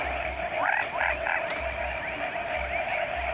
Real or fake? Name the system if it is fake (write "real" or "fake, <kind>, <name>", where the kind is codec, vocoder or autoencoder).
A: real